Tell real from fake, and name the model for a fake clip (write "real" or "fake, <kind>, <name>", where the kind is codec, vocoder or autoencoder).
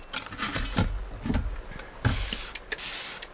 real